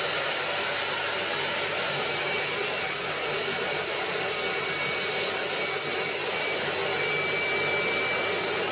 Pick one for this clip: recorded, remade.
recorded